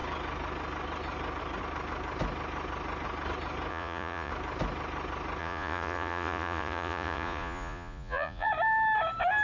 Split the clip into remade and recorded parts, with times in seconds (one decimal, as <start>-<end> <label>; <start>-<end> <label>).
0.0-3.7 recorded; 3.7-4.3 remade; 4.3-5.4 recorded; 5.4-8.5 remade; 8.5-9.4 recorded